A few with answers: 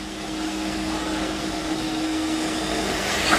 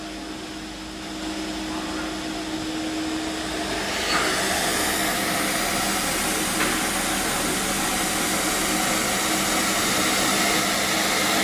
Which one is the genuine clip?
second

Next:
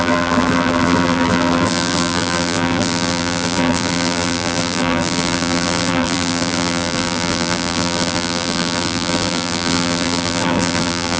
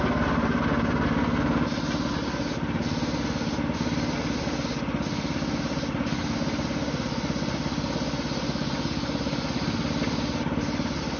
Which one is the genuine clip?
second